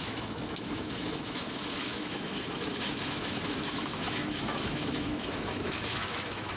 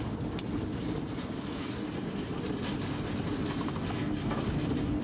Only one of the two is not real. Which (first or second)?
first